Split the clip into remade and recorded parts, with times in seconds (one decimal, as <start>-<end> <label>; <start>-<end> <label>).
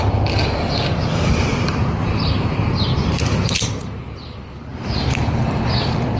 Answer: 0.0-1.5 recorded; 1.5-3.8 remade; 3.8-4.7 recorded; 4.7-5.4 remade; 5.4-6.2 recorded